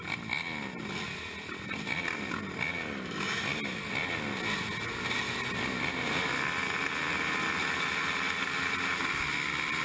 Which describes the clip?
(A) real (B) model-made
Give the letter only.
A